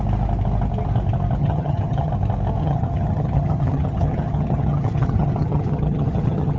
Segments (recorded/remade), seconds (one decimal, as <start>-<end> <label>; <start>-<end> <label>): 0.0-1.4 recorded; 1.4-2.1 remade; 2.1-2.6 recorded; 2.6-6.6 remade